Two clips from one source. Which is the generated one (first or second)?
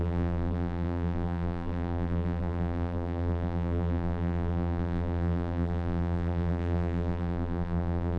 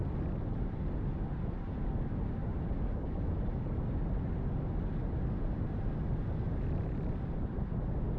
first